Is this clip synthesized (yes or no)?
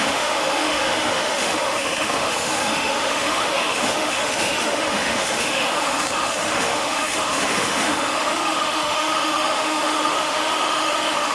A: yes